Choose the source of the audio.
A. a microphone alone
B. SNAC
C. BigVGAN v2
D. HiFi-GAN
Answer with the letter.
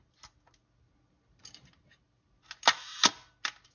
A